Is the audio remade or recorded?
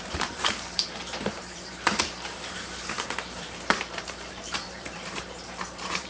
remade